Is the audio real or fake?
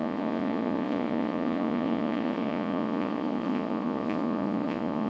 fake